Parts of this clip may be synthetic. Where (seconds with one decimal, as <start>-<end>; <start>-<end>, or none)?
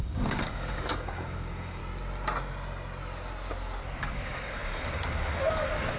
0.0-1.8; 4.0-6.0